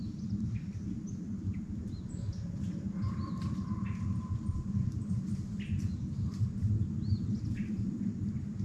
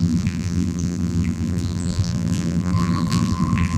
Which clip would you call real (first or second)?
first